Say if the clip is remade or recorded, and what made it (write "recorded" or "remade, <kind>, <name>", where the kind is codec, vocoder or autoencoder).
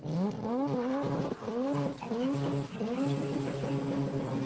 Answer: recorded